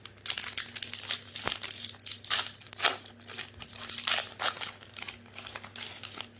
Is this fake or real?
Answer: real